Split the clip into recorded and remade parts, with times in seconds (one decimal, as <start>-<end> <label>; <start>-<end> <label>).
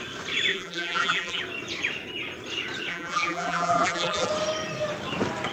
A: 0.0-0.5 recorded; 0.5-1.4 remade; 1.4-2.9 recorded; 2.9-4.3 remade; 4.3-5.5 recorded